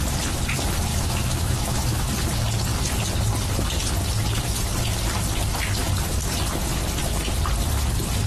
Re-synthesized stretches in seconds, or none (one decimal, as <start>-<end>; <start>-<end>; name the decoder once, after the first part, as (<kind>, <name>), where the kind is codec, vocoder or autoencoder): 0.9-2.1 (autoencoder, DAC-VAE)